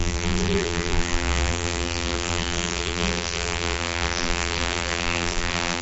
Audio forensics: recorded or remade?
remade